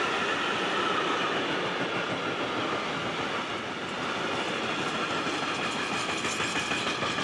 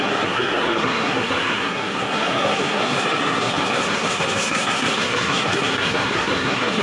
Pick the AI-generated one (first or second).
second